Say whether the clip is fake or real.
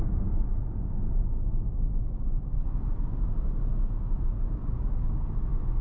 real